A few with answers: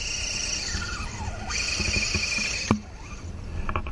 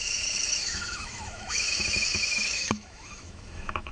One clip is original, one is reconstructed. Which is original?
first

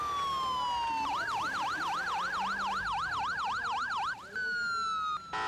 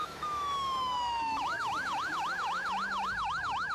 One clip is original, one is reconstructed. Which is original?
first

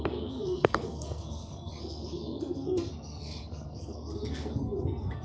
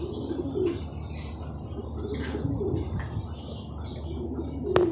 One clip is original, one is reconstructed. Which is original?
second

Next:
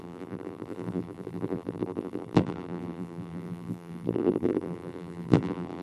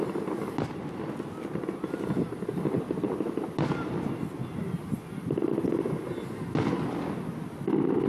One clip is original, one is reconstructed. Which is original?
second